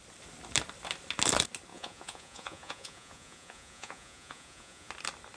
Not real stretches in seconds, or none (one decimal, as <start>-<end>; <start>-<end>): 1.7-4.9